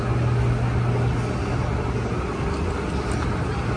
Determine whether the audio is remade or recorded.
recorded